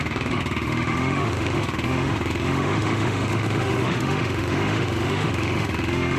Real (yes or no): no